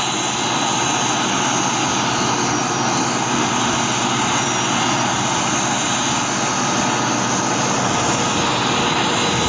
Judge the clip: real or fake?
real